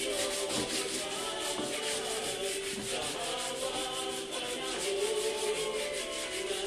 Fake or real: real